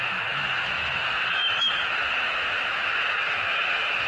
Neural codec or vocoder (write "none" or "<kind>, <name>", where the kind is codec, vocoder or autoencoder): autoencoder, DAC-VAE